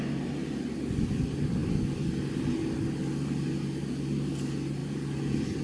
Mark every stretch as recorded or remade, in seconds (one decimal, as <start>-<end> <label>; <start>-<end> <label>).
0.0-5.6 recorded